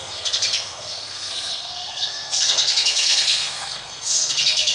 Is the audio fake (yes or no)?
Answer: yes